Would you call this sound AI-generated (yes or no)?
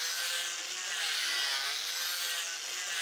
no